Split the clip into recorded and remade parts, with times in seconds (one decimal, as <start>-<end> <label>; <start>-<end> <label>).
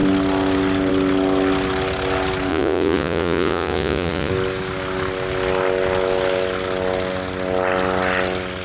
0.0-2.5 recorded; 2.5-4.3 remade; 4.3-8.6 recorded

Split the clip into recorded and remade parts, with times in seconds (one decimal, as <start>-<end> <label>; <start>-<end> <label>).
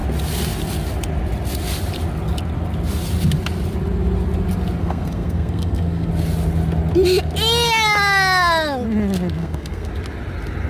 0.0-4.8 recorded; 4.8-6.1 remade; 6.1-9.4 recorded; 9.4-9.9 remade; 9.9-10.7 recorded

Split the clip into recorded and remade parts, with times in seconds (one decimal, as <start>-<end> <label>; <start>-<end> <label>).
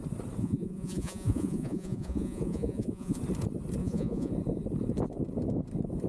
0.0-0.4 recorded; 0.4-3.2 remade; 3.2-3.8 recorded; 3.8-4.3 remade; 4.3-6.1 recorded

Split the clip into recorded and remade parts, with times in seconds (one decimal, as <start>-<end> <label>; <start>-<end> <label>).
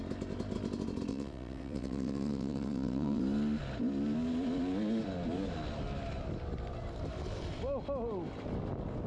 0.0-1.1 recorded; 1.1-3.2 remade; 3.2-9.1 recorded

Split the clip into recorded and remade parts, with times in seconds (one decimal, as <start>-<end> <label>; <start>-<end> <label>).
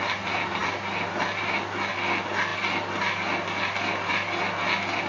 0.0-5.1 recorded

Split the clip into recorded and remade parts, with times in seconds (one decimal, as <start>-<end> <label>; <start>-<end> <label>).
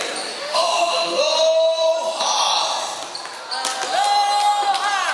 0.0-0.4 recorded; 0.4-1.2 remade; 1.2-5.1 recorded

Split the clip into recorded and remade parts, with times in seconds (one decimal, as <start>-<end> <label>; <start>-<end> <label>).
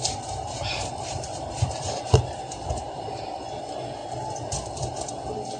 0.0-3.4 remade; 3.4-5.6 recorded